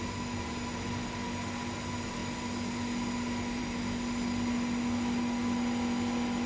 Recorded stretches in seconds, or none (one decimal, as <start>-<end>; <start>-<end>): 0.0-6.5